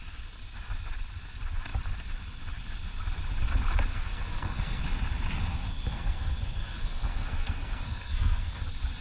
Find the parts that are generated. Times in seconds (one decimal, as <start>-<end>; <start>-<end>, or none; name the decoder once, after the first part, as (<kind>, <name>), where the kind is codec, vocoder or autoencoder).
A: 3.9-4.8 (codec, SNAC); 5.9-8.6